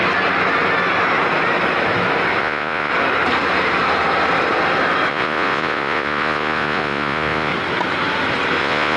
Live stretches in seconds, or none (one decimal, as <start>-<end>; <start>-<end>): 0.0-2.4; 2.9-5.1; 7.5-8.6